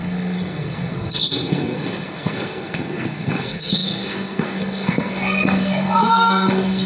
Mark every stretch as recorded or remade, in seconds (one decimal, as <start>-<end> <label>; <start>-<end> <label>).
0.0-6.9 remade